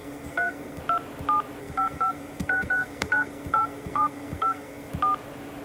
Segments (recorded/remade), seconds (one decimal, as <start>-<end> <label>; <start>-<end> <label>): 0.0-0.8 remade; 0.8-1.6 recorded; 1.6-4.9 remade; 4.9-5.6 recorded